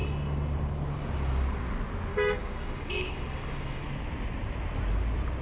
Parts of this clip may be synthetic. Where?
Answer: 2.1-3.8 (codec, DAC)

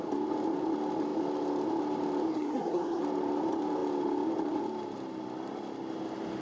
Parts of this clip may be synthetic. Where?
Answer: 2.3-3.0 (codec, SNAC)

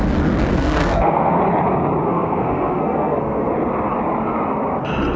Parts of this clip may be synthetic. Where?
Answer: 0.5-1.4 (codec, SNAC); 2.0-3.5

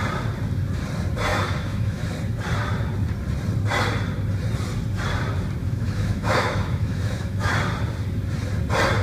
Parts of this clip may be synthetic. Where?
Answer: 1.3-2.1 (autoencoder, DAC-VAE); 5.6-7.5

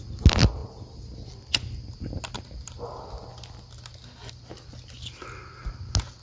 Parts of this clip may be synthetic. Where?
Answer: none

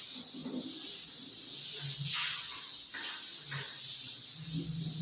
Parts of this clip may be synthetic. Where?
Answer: none

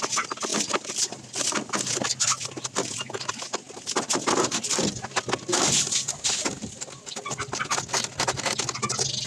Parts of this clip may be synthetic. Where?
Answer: none

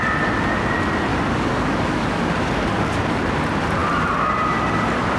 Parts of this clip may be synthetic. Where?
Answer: 1.1-3.2 (codec, DAC)